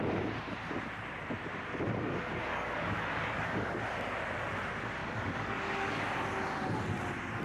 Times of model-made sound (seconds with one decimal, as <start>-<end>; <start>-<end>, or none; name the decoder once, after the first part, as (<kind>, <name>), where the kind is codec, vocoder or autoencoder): 2.5-3.8 (codec, DAC); 5.0-6.0